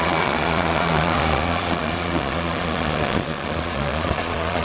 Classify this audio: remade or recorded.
remade